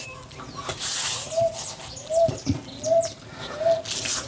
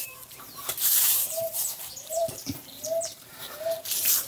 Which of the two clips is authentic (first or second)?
first